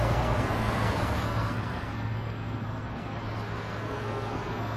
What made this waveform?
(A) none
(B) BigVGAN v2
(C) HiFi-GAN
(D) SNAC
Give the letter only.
D